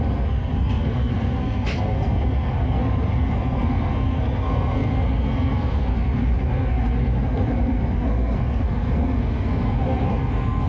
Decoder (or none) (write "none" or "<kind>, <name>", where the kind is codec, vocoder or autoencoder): codec, SNAC